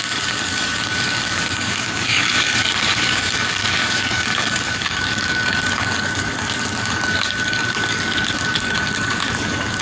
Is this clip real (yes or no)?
no